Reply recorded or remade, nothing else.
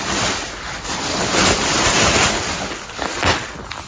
recorded